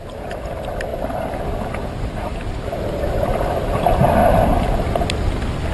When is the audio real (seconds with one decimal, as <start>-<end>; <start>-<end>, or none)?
0.0-5.7